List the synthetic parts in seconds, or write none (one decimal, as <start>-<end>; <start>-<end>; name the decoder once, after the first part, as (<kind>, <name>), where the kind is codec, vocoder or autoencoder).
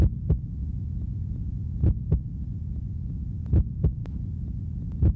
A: 0.6-2.1 (vocoder, Vocos); 2.6-3.1